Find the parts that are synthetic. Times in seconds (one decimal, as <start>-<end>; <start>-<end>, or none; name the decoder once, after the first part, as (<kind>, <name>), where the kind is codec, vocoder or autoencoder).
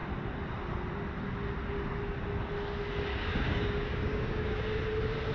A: 3.1-4.8 (codec, DAC)